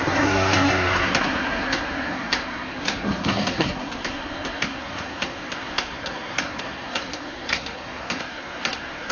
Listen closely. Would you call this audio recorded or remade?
remade